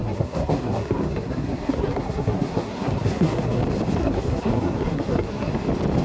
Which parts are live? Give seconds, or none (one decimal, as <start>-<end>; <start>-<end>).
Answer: 3.6-4.0; 5.5-6.0